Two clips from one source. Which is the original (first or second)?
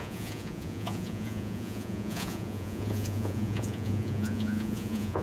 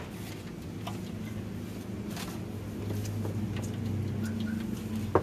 second